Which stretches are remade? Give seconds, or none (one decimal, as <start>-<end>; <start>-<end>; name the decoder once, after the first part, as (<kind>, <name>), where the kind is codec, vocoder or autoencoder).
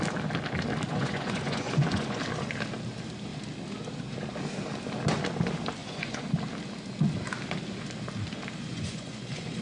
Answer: 0.9-2.2 (vocoder, Vocos); 5.8-6.3; 8.7-9.6